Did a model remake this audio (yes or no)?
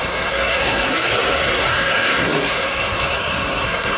yes